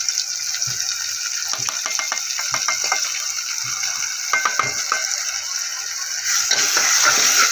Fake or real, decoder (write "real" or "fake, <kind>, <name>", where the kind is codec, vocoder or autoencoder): real